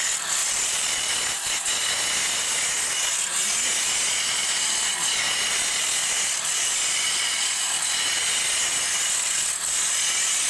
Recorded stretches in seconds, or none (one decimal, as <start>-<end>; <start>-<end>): 0.0-0.4; 1.1-6.0; 7.8-10.5